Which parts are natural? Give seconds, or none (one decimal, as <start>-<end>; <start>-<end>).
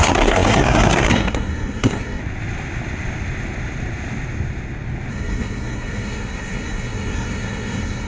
2.2-5.1